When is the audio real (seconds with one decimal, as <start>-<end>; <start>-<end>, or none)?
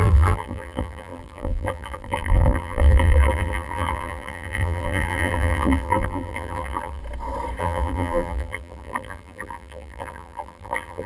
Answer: 7.0-7.6